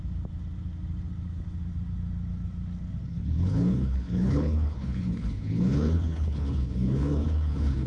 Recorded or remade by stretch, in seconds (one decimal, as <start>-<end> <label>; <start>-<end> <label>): 0.0-3.0 recorded; 3.0-7.9 remade